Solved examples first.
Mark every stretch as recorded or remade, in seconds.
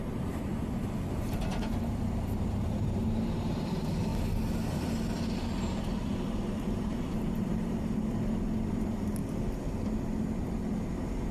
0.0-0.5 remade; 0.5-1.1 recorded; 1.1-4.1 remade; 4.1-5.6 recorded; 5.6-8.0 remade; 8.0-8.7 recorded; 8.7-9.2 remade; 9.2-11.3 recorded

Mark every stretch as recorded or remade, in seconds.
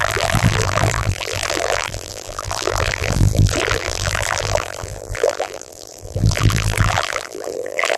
0.0-8.0 remade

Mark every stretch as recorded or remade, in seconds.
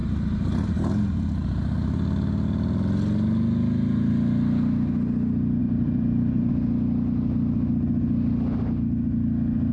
0.0-5.6 recorded; 5.6-6.5 remade; 6.5-9.7 recorded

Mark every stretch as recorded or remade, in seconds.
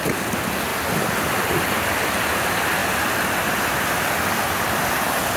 0.0-5.4 recorded